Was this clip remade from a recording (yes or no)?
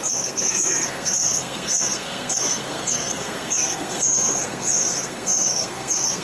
yes